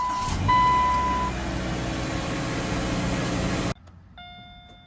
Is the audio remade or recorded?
recorded